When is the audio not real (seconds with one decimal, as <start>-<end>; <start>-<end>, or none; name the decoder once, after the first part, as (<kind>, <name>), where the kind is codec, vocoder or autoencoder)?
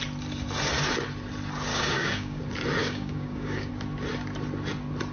1.7-2.4 (codec, DAC); 2.8-3.7